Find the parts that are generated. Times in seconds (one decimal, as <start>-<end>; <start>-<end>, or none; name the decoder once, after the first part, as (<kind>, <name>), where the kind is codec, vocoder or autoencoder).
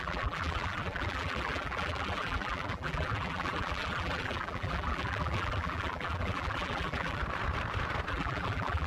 0.0-7.2 (vocoder, BigVGAN v2); 8.1-8.9